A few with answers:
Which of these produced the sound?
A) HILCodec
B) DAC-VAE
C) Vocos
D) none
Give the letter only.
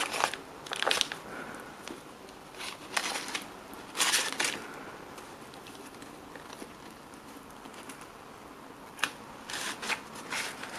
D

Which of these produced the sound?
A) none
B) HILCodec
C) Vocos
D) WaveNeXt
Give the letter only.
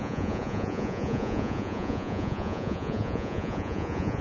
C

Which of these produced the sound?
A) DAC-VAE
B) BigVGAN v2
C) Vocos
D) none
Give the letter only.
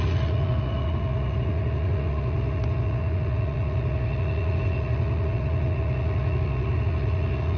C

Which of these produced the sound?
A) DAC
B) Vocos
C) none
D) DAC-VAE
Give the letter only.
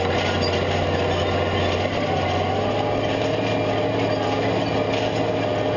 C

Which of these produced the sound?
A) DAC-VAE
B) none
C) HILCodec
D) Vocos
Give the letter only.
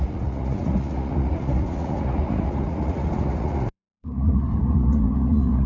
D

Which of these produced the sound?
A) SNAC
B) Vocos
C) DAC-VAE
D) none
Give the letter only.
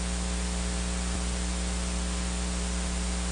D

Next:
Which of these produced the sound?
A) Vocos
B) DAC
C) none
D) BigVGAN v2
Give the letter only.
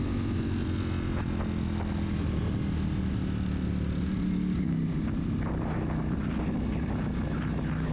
C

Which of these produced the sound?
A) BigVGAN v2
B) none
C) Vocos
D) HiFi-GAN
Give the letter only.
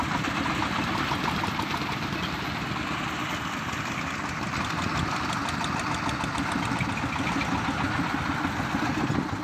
B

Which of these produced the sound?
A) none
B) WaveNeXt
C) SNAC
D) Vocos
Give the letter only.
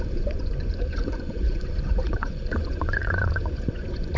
D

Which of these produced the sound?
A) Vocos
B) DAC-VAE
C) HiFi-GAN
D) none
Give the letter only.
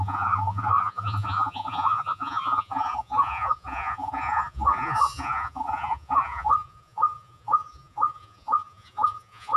A